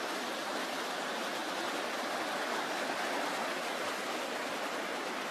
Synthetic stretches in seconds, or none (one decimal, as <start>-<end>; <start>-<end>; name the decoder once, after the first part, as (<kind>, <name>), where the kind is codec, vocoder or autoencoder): 1.4-3.4 (vocoder, BigVGAN v2)